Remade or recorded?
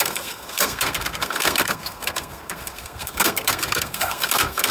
remade